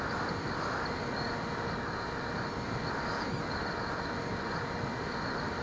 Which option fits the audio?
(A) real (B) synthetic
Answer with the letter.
A